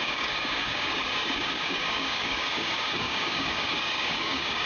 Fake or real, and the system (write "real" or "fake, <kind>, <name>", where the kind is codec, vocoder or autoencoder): fake, codec, DAC